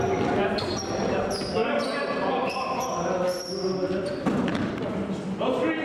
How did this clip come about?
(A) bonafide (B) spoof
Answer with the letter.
A